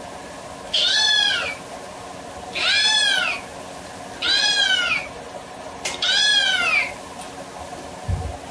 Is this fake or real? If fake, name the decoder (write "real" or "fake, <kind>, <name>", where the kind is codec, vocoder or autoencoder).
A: real